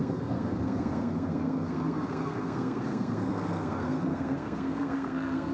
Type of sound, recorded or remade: remade